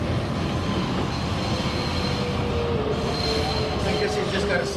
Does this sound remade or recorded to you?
recorded